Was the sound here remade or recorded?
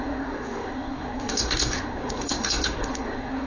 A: remade